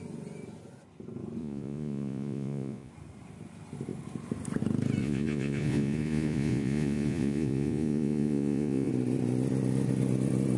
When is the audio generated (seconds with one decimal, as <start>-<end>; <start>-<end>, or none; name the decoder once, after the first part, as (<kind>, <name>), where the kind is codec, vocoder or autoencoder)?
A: 1.4-2.9 (vocoder, Vocos); 5.0-8.9